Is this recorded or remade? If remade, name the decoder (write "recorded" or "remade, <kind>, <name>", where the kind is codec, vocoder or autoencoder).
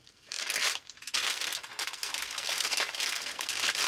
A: remade, codec, SNAC